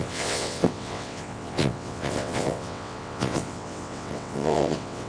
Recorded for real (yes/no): no